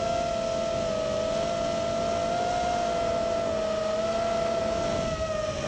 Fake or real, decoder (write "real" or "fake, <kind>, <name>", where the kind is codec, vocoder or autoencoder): real